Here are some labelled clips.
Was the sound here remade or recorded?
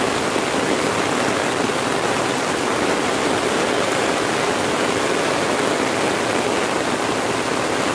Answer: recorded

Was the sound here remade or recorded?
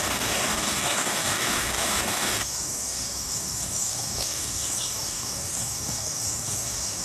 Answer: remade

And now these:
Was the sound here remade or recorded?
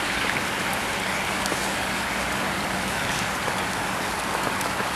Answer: remade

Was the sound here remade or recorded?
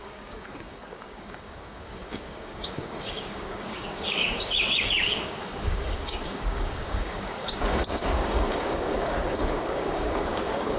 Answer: remade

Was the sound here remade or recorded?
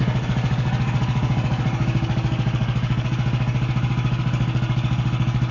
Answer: remade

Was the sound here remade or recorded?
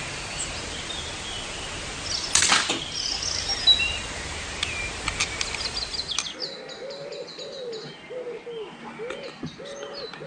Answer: recorded